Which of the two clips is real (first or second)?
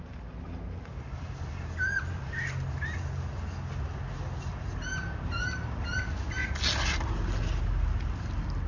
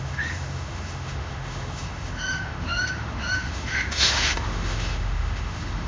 first